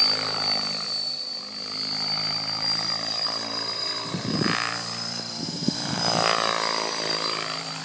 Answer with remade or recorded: remade